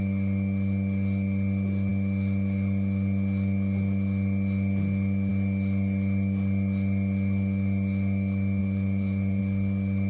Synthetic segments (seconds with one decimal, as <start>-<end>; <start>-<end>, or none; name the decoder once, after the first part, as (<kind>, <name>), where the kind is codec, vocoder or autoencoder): 8.6-9.4 (vocoder, Vocos)